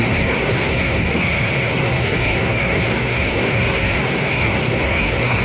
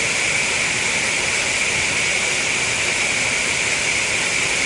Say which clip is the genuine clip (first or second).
second